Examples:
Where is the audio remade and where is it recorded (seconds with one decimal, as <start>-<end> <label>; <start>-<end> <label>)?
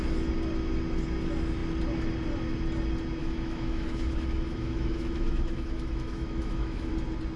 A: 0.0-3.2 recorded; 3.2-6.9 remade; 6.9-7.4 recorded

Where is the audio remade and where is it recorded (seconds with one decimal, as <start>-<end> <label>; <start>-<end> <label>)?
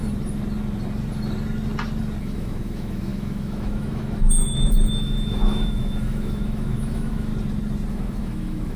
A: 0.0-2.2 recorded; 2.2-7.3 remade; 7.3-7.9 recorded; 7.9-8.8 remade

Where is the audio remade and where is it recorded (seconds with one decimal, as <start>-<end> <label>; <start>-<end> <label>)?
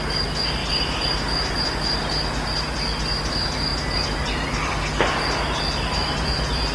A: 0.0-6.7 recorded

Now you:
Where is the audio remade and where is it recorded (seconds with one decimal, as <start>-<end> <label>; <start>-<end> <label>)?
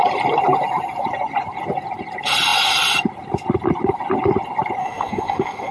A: 0.0-4.8 recorded; 4.8-5.7 remade